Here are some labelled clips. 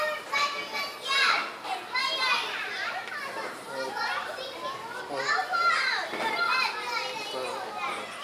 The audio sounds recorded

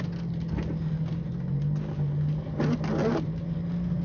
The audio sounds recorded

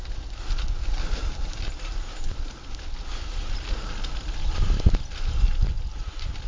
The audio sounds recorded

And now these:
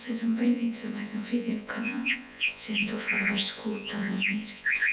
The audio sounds remade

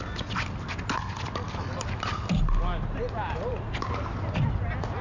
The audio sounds recorded